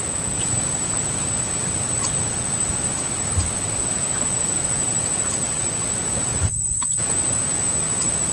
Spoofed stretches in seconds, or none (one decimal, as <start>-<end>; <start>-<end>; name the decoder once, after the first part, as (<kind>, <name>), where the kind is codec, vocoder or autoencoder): 0.0-1.6 (vocoder, Vocos); 3.8-8.3